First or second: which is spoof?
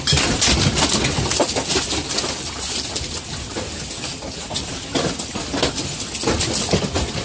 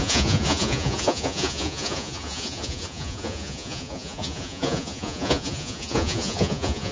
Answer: second